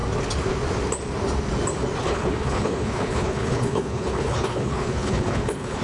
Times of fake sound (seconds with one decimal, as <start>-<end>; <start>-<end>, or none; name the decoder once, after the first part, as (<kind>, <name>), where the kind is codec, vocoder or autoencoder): 2.0-5.8 (codec, HILCodec)